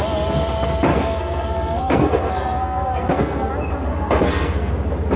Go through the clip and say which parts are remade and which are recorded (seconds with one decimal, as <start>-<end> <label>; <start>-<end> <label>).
0.0-0.9 recorded; 0.9-3.5 remade; 3.5-3.9 recorded; 3.9-4.7 remade; 4.7-5.2 recorded